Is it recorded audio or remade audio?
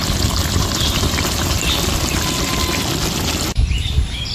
remade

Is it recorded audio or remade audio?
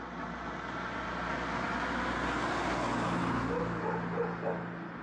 recorded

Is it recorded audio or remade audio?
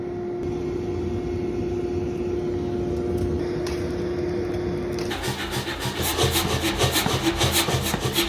recorded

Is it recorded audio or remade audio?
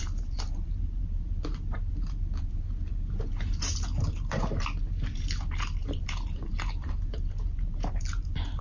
remade